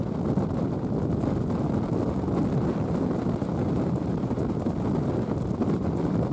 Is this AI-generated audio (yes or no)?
no